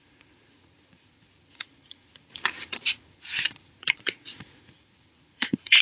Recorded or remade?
remade